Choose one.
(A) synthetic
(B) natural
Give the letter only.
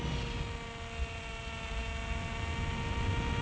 B